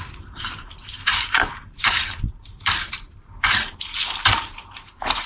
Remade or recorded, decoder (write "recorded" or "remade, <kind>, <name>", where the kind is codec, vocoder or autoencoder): remade, vocoder, BigVGAN v2